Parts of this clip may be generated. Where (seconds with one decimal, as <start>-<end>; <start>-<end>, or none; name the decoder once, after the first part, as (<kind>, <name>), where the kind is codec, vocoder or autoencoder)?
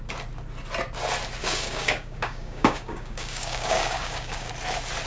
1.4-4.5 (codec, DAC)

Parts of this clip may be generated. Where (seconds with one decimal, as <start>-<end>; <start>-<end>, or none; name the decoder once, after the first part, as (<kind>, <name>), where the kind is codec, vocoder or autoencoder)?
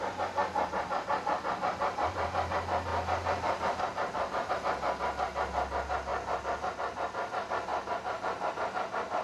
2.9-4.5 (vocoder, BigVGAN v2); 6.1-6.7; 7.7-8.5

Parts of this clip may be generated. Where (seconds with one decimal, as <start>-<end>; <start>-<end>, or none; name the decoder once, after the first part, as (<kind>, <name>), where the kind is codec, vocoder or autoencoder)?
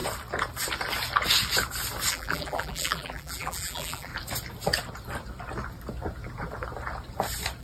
2.1-4.1 (vocoder, BigVGAN v2)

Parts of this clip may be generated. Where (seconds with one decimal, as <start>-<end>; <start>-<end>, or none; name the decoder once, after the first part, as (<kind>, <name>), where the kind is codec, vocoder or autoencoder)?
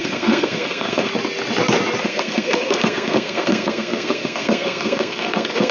0.0-1.1 (codec, SNAC); 2.0-5.7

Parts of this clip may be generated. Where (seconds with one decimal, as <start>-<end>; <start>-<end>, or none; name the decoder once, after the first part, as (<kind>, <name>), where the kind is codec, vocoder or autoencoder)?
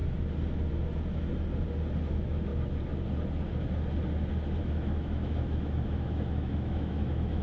2.1-2.5 (autoencoder, DAC-VAE); 4.6-7.4